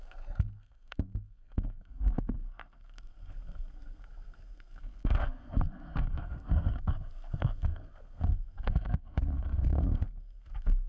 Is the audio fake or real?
fake